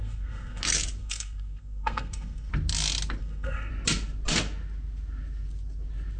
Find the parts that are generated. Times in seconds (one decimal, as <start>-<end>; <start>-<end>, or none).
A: 0.0-0.6; 1.0-2.5; 3.2-3.7